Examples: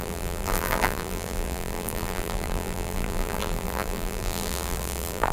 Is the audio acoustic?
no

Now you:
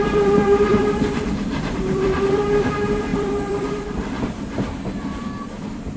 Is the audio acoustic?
no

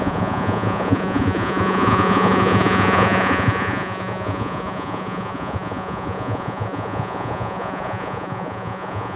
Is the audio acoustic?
no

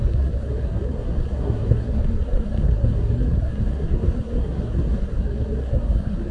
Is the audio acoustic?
no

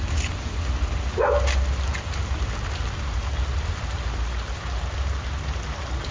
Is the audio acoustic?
yes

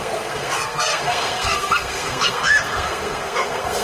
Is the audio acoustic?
no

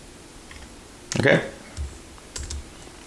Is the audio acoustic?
yes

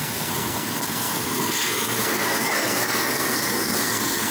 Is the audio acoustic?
no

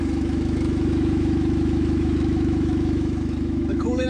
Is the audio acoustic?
no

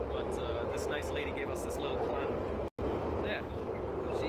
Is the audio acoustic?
yes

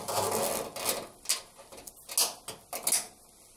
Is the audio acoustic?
yes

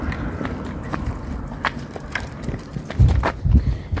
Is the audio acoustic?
yes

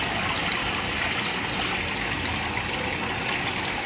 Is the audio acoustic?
yes